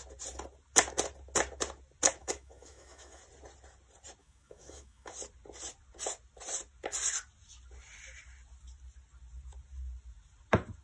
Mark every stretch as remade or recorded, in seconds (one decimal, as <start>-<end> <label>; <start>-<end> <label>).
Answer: 0.0-2.2 recorded; 2.2-3.2 remade; 3.2-4.2 recorded; 4.2-5.1 remade; 5.1-10.8 recorded